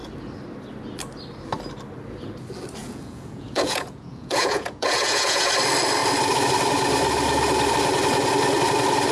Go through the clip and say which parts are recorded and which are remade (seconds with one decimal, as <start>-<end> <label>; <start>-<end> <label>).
0.0-2.8 recorded; 2.8-5.5 remade; 5.5-9.1 recorded